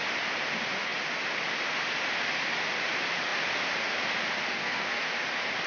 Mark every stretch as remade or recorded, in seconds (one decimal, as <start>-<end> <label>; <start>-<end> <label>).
0.0-4.5 recorded; 4.5-5.1 remade; 5.1-5.7 recorded